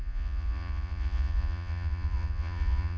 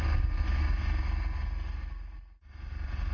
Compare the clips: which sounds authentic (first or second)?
second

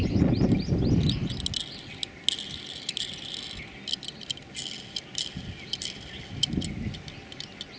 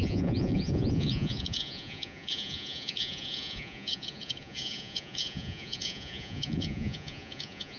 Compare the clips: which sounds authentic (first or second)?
first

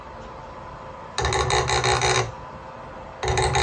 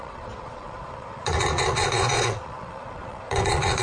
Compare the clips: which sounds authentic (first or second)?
first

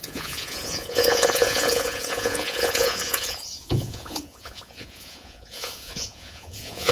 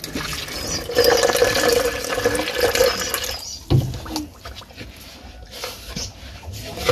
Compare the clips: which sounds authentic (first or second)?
second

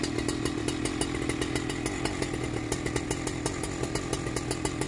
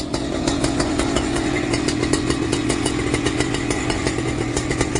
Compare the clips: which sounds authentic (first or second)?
first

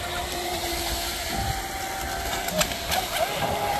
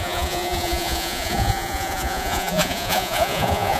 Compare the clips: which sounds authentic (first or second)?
first